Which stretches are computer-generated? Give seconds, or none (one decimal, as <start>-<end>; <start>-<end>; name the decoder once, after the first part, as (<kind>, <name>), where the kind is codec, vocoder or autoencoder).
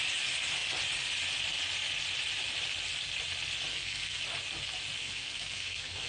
3.7-4.2 (codec, SNAC); 5.0-6.1